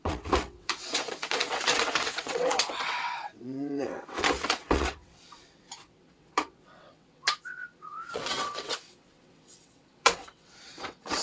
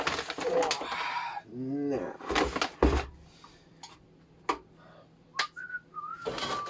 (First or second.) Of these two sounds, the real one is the second